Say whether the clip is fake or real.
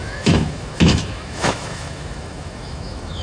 fake